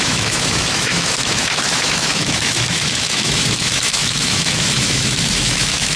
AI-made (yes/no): yes